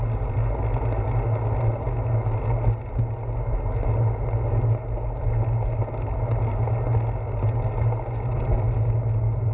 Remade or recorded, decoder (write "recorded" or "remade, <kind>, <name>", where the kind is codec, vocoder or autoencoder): recorded